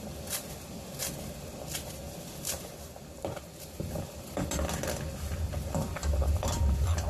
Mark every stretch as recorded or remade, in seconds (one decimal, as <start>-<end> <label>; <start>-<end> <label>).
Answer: 0.0-7.1 recorded